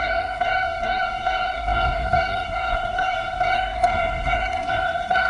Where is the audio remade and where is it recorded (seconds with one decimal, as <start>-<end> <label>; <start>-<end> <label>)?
0.0-5.3 remade